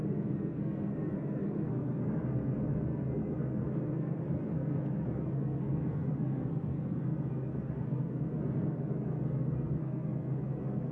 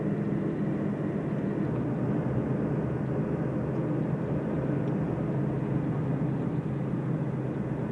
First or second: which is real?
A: second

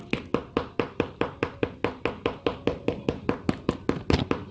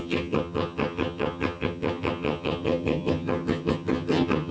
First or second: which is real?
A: first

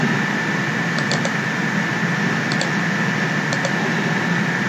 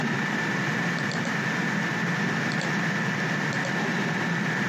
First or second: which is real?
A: first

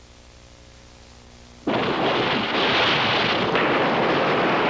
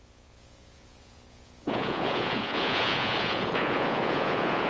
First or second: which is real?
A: first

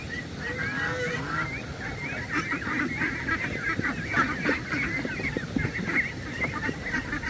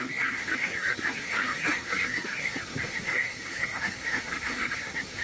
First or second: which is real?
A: first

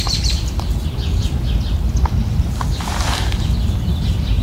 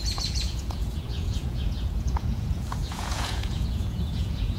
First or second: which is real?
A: first